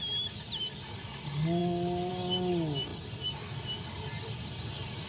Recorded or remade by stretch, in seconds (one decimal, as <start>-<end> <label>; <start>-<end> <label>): 0.0-5.1 recorded